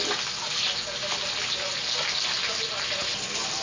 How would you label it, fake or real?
real